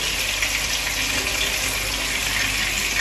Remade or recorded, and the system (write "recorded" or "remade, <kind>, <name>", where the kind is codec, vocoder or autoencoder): recorded